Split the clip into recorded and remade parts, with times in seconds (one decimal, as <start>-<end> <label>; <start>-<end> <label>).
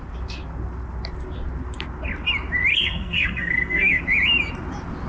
0.0-2.7 recorded; 2.7-4.0 remade; 4.0-5.1 recorded